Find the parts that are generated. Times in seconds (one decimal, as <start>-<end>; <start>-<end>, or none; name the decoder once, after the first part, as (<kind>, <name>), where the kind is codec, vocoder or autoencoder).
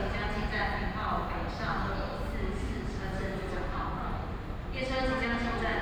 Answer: none